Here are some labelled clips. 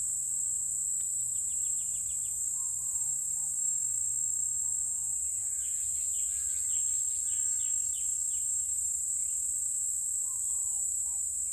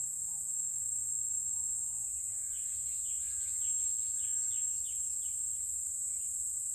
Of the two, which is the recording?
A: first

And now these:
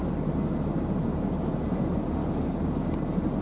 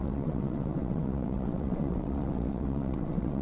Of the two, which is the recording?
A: first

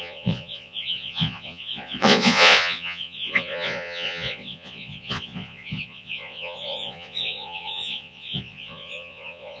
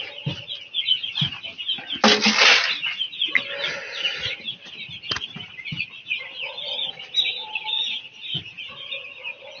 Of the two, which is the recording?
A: second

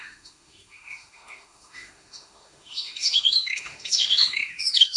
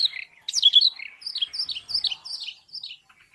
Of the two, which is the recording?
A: second